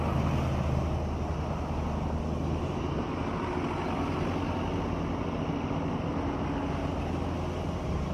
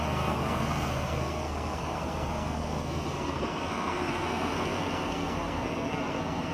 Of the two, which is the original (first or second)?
first